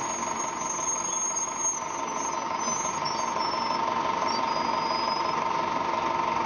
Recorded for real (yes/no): yes